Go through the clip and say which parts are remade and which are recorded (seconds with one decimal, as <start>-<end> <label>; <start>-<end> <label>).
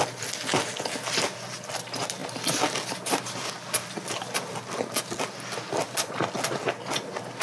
0.0-7.4 recorded